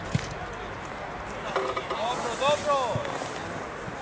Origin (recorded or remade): recorded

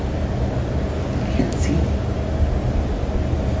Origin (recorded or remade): recorded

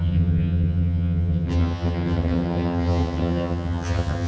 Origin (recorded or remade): remade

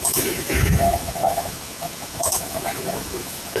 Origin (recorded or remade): remade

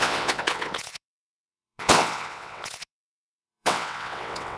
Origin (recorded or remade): remade